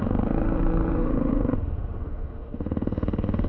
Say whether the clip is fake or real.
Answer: fake